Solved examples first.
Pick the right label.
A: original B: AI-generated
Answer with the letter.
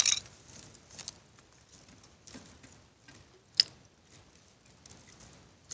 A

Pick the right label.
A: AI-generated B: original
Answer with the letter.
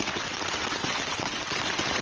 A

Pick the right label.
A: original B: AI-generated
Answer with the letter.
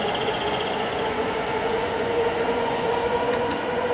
B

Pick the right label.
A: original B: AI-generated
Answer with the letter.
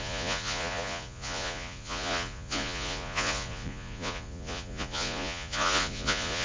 B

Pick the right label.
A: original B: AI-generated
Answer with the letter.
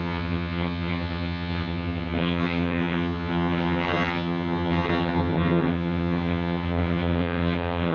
B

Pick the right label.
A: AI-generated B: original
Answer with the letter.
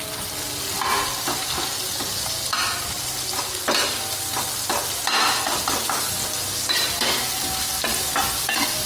B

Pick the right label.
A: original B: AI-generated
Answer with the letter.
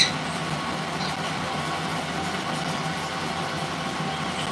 A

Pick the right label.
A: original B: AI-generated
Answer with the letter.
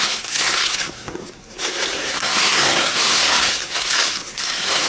B